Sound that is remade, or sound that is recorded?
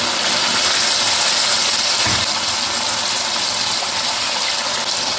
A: recorded